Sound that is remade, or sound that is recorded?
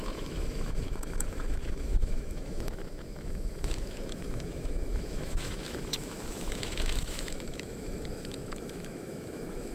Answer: remade